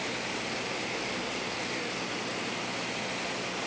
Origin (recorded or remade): recorded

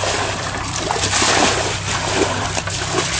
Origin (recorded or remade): recorded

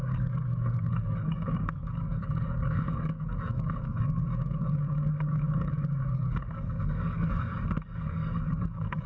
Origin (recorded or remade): remade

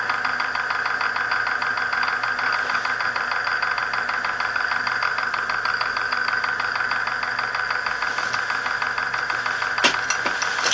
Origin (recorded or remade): recorded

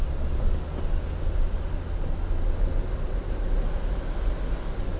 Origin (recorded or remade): recorded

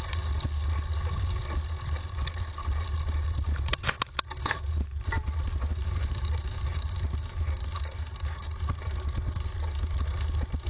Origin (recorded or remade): recorded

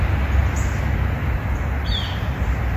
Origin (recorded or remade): recorded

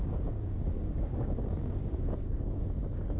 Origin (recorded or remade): remade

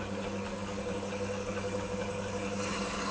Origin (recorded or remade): remade